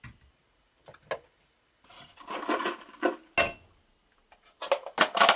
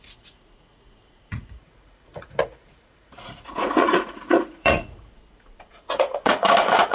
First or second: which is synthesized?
second